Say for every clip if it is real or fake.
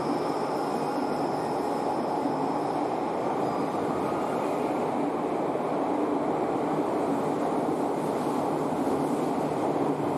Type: real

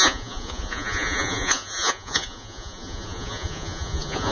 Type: fake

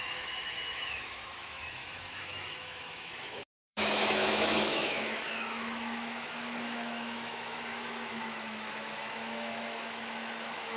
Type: fake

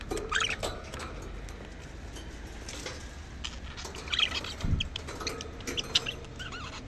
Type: real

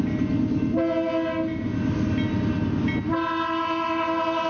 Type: real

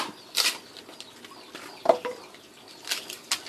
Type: real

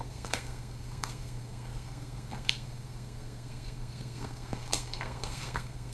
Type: fake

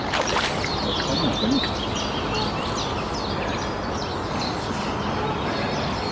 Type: real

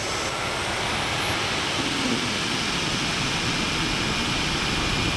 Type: real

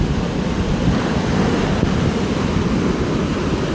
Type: real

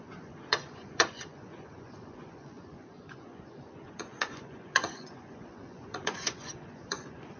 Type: fake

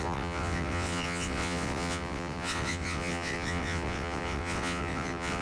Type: fake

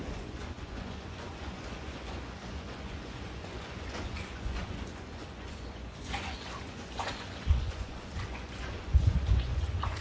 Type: fake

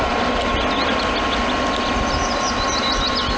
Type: real